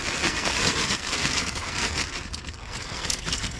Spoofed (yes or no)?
yes